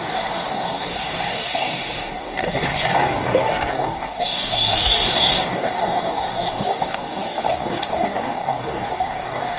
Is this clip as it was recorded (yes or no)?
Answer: no